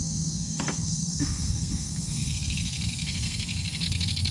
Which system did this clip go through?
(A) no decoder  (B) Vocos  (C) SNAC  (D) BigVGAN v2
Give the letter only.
C